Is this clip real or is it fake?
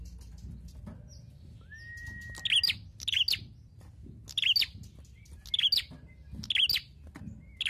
real